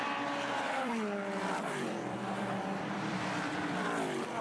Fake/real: fake